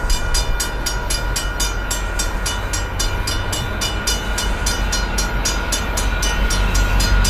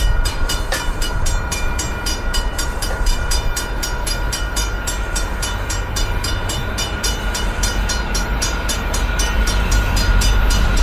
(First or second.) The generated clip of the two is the second